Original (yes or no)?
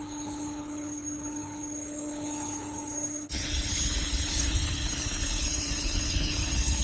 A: no